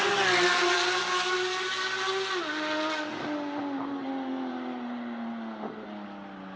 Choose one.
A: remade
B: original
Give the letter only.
B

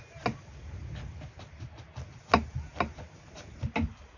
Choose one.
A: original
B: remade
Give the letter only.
A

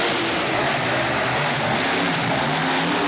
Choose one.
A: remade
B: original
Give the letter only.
B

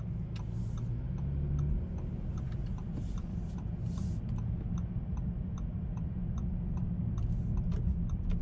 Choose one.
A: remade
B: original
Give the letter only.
B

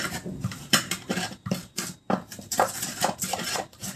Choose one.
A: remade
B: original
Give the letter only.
A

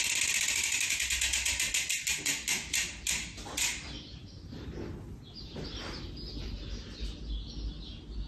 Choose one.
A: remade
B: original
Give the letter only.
B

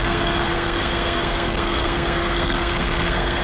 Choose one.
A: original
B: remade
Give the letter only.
B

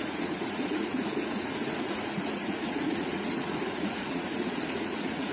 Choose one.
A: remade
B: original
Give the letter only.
A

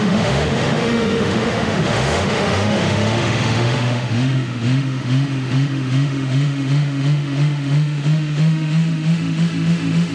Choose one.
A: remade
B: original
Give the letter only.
A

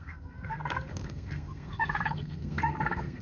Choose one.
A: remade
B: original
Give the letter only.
A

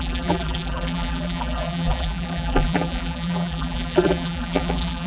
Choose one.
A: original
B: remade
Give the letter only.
B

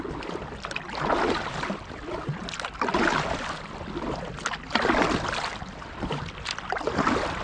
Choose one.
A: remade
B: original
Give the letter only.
B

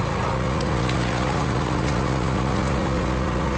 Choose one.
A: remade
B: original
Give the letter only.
A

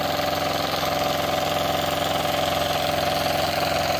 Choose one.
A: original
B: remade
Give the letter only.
A